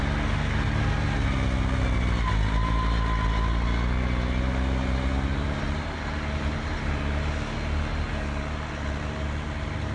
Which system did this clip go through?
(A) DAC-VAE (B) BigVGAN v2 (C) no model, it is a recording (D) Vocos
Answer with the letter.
C